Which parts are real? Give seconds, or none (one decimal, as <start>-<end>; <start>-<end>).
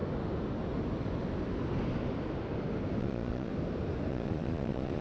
0.0-3.0; 3.5-4.1